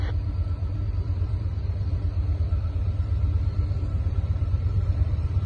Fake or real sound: fake